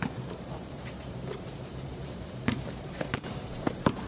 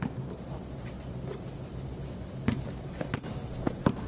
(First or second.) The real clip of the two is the second